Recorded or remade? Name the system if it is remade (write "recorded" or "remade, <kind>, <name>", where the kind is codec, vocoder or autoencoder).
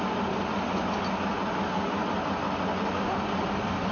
recorded